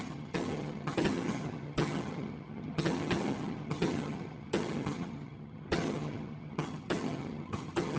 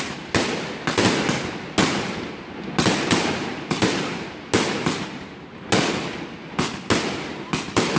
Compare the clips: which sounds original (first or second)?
second